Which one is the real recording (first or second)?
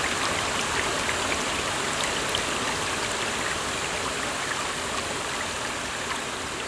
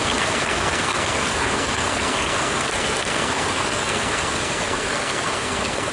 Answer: first